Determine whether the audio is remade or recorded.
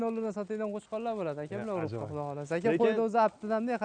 recorded